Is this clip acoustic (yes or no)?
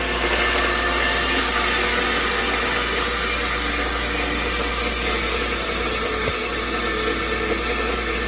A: yes